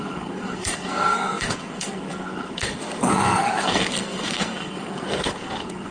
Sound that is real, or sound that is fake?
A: fake